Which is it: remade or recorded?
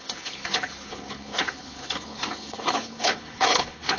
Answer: remade